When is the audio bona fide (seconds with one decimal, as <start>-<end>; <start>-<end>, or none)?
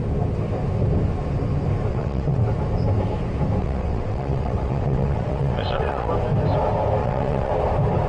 0.0-1.9; 2.4-3.6; 6.1-7.0; 7.5-8.1